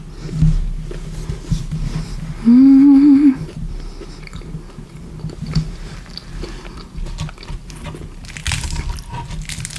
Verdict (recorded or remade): recorded